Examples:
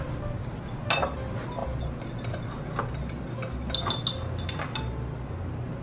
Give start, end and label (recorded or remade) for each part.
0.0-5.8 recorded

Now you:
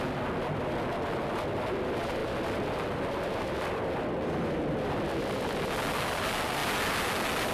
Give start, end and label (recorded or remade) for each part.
0.0-7.5 recorded